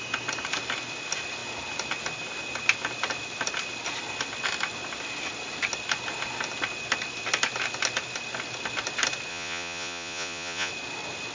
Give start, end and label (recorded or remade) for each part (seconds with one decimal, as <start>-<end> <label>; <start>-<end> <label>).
0.0-9.3 recorded; 9.3-10.7 remade; 10.7-11.3 recorded